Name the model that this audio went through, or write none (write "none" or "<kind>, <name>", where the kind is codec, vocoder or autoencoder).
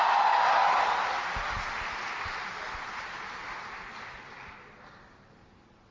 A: none